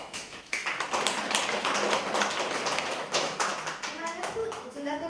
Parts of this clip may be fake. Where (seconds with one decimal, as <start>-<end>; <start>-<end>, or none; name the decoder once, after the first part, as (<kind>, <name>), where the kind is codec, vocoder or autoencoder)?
0.0-0.6 (autoencoder, DAC-VAE); 3.0-3.5; 4.0-5.1